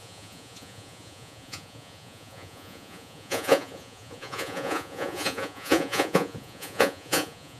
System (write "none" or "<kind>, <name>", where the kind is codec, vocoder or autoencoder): vocoder, Vocos